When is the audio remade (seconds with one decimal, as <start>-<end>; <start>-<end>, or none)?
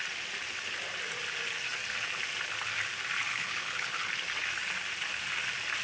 3.3-4.1